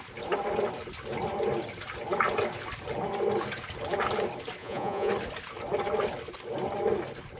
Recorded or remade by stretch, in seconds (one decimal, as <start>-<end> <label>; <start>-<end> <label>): 0.0-4.6 recorded; 4.6-5.1 remade; 5.1-7.4 recorded

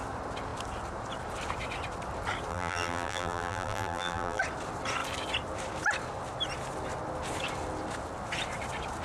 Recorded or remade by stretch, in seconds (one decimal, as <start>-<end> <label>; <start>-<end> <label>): 0.0-2.5 recorded; 2.5-4.4 remade; 4.4-9.0 recorded